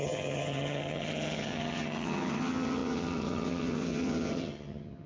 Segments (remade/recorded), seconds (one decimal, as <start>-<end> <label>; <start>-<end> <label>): 0.0-5.1 remade